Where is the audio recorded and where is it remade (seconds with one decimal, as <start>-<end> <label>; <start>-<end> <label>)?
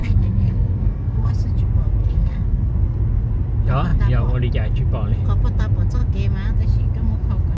0.0-1.3 remade; 1.3-2.0 recorded; 2.0-2.7 remade; 2.7-7.6 recorded